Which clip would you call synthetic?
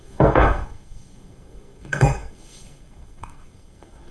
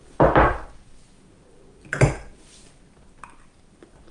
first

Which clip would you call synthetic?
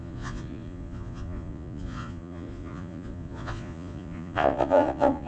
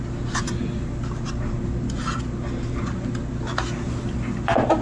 first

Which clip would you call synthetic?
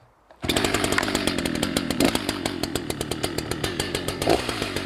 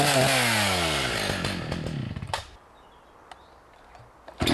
first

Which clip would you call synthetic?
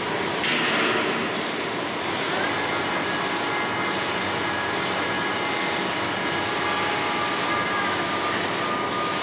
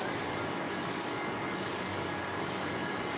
second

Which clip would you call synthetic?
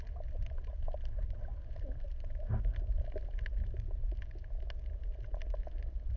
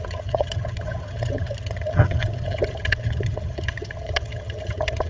second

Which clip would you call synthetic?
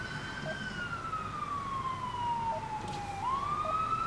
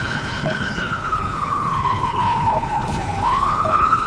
second